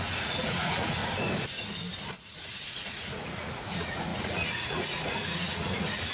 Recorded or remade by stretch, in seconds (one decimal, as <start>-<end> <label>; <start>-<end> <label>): 0.0-1.0 remade; 1.0-2.2 recorded; 2.2-6.1 remade